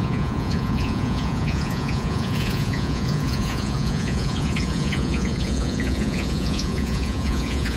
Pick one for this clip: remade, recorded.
remade